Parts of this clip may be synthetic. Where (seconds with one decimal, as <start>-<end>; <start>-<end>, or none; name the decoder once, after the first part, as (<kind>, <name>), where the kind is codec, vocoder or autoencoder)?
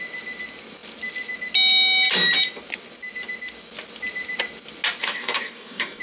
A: 5.0-6.0 (codec, DAC)